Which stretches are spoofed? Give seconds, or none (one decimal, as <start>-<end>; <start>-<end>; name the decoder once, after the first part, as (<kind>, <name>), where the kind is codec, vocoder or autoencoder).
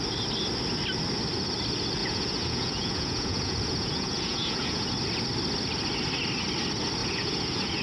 2.0-4.9 (vocoder, Vocos); 7.0-7.8